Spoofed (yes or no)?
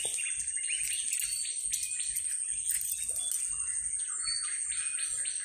no